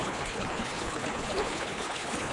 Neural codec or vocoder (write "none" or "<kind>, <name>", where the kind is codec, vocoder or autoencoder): codec, HILCodec